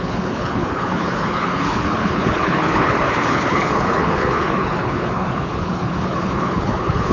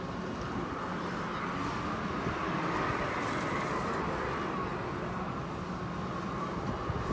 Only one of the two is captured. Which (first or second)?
second